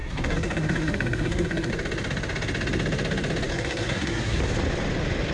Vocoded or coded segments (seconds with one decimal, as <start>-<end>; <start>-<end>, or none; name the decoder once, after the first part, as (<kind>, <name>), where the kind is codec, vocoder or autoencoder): 0.0-1.7 (codec, SNAC); 3.5-4.4